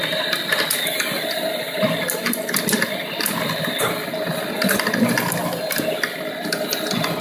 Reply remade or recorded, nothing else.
recorded